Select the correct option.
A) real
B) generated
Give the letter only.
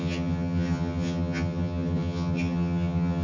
B